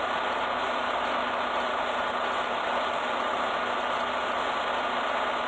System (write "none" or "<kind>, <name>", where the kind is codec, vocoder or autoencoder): none